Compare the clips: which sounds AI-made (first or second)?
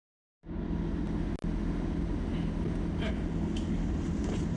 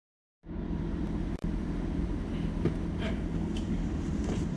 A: second